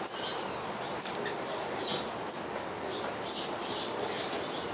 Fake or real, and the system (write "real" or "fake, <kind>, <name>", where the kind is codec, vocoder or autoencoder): real